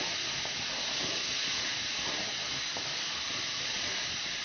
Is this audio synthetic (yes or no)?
no